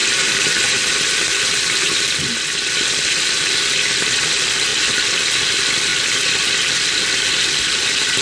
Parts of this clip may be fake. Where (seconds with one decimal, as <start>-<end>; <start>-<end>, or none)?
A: none